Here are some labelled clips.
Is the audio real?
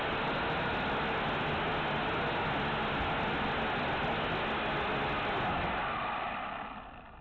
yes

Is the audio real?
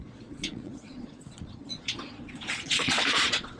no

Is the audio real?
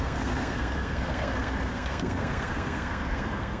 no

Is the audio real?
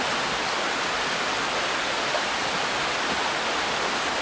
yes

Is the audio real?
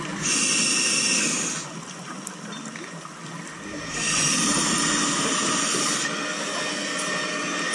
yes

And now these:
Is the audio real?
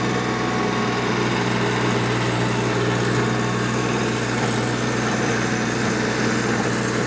yes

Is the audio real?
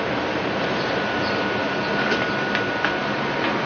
yes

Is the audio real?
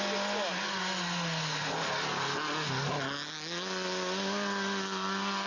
yes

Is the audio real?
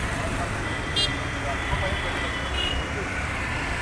yes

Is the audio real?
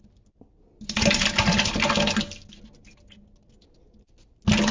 yes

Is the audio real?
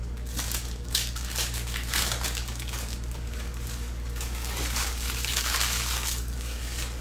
no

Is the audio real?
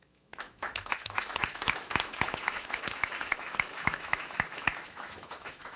no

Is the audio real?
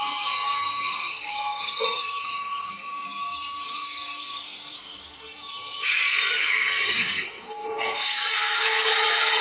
no